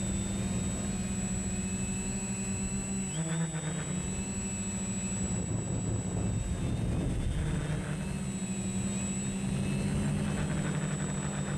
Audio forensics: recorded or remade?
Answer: recorded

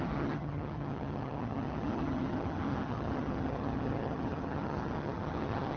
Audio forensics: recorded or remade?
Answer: remade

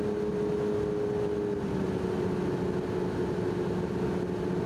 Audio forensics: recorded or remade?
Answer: recorded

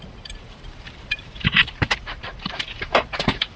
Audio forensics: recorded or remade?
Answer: remade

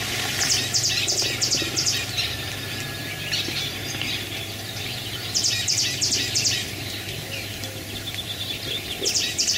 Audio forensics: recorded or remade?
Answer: remade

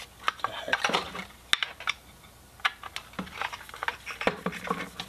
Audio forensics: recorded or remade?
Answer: recorded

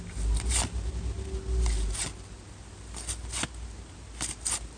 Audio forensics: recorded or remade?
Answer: recorded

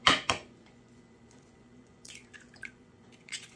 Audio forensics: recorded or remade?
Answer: remade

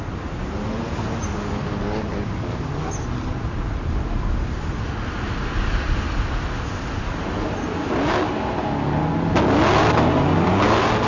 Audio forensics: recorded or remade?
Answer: recorded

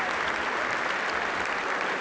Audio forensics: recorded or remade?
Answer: recorded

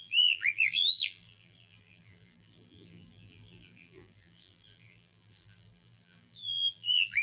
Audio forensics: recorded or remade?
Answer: remade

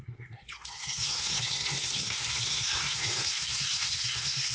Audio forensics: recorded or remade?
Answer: remade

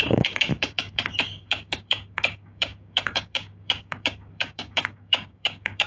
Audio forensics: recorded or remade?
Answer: remade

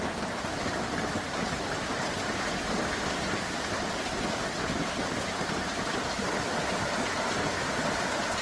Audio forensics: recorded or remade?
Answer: recorded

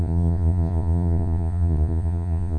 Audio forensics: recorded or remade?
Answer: remade